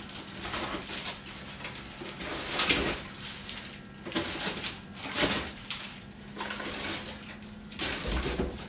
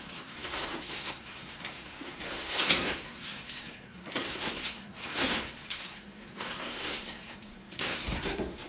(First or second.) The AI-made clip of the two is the second